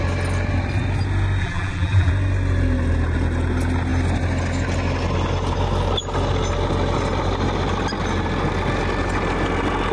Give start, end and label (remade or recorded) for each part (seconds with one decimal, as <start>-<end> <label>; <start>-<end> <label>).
0.0-1.4 recorded; 1.4-2.1 remade; 2.1-9.9 recorded